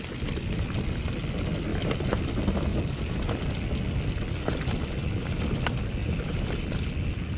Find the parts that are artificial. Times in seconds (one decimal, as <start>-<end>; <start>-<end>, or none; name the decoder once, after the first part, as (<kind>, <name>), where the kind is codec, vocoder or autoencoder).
1.7-2.3 (vocoder, BigVGAN v2); 2.7-3.5; 6.0-7.4